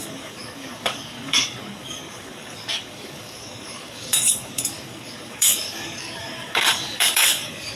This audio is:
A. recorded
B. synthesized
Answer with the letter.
B